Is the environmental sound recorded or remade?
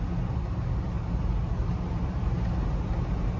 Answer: recorded